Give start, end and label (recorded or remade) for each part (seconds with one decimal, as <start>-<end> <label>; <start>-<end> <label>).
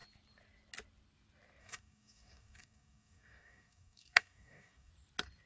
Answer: 0.0-1.6 recorded; 1.6-4.9 remade; 4.9-5.5 recorded